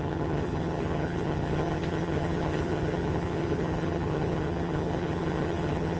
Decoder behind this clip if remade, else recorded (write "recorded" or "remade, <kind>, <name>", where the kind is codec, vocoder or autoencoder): remade, vocoder, HiFi-GAN